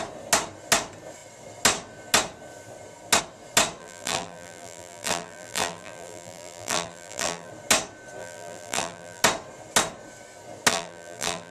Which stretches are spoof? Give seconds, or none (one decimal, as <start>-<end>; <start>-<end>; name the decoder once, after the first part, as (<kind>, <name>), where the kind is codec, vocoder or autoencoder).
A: 3.8-7.5 (vocoder, BigVGAN v2); 8.2-9.2; 10.7-11.5